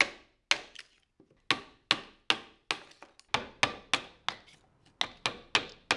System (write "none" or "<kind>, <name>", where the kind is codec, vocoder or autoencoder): none